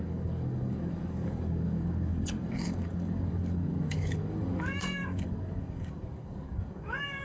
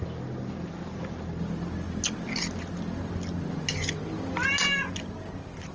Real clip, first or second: second